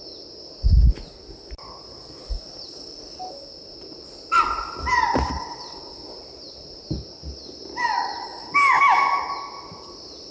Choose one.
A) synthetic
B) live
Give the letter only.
B